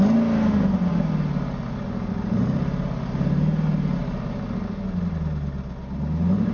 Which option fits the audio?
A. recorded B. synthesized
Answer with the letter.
A